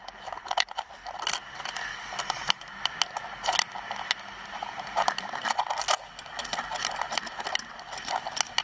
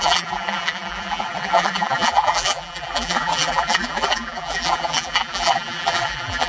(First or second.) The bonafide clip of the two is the first